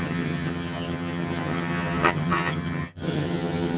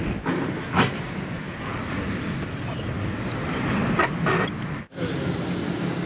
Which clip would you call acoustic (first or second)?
second